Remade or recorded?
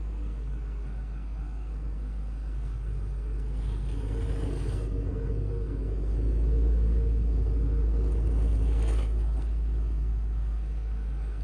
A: remade